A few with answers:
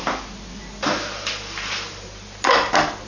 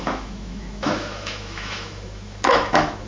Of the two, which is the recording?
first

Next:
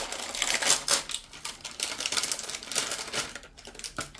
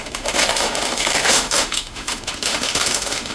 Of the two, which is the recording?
first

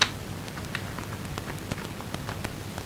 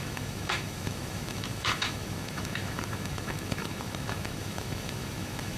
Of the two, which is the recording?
first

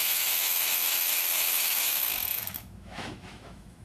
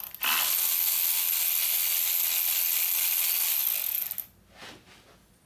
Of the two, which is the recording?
second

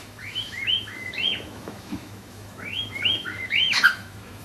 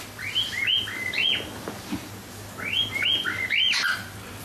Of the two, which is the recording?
second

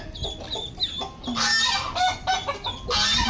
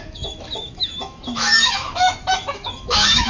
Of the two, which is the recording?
first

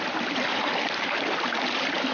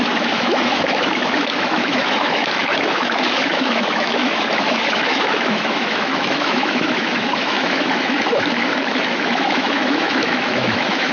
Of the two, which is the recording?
first